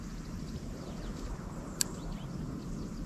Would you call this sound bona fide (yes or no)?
yes